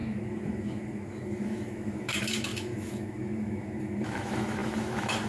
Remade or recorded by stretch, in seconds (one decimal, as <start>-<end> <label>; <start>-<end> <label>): 0.0-5.3 remade

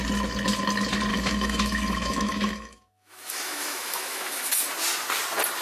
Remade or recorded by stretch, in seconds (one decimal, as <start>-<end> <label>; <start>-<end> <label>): 0.0-1.1 recorded; 1.1-4.5 remade; 4.5-5.6 recorded